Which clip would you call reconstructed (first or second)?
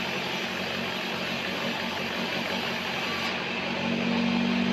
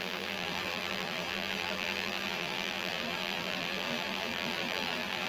second